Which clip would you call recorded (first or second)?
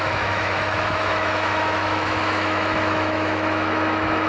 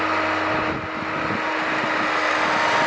second